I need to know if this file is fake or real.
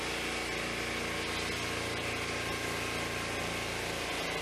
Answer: real